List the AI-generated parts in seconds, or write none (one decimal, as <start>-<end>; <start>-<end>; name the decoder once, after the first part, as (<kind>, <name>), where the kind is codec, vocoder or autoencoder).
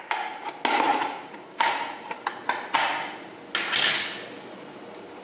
0.9-2.2 (vocoder, BigVGAN v2)